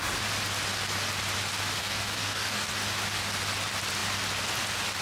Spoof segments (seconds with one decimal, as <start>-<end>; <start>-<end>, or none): 1.8-2.7